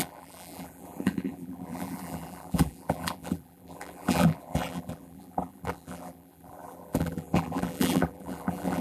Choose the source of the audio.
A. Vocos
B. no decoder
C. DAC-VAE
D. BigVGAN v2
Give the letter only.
D